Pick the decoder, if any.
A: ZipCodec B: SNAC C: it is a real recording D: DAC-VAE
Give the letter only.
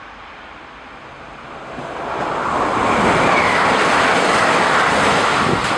C